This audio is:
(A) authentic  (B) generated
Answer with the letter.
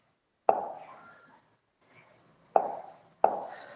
A